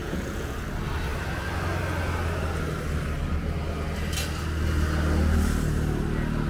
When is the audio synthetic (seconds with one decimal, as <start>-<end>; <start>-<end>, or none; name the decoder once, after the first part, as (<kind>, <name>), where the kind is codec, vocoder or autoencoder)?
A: 0.0-0.5 (vocoder, Vocos)